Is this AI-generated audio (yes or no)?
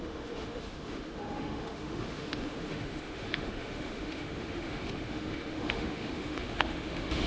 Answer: yes